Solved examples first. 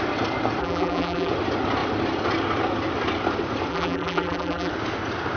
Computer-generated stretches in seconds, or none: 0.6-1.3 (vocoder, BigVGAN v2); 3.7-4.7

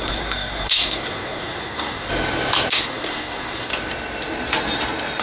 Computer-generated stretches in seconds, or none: 0.0-2.1 (codec, SNAC); 2.7-3.7

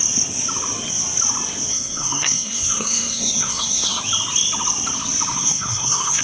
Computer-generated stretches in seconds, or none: 1.7-4.0 (codec, SNAC); 5.3-6.2

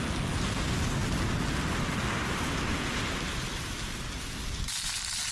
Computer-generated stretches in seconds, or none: none

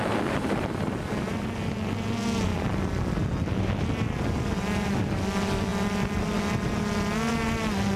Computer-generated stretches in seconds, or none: none